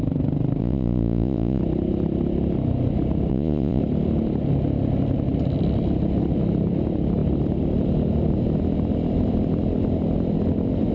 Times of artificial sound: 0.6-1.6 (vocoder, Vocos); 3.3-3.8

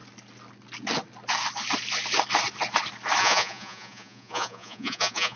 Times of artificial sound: 3.2-5.4 (vocoder, Vocos)